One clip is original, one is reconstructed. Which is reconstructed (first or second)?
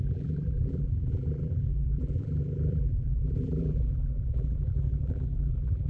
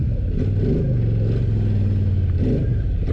first